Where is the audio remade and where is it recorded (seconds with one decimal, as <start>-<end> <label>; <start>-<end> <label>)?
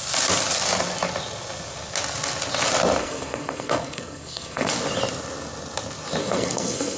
0.0-3.0 recorded; 3.0-4.7 remade; 4.7-6.2 recorded; 6.2-7.0 remade